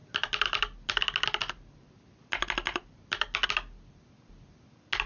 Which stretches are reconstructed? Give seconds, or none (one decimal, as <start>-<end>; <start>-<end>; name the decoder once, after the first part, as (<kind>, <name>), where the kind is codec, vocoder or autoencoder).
none